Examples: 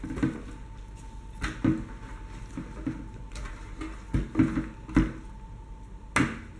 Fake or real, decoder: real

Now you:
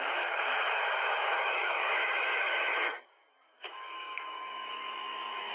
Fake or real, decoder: fake, autoencoder, DAC-VAE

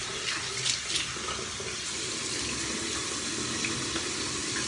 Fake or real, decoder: real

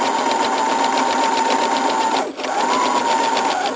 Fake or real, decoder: real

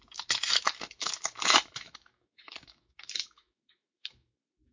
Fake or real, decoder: fake, autoencoder, DAC-VAE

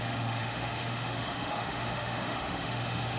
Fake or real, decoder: fake, autoencoder, DAC-VAE